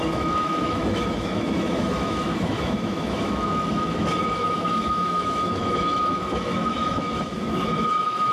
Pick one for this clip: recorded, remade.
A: remade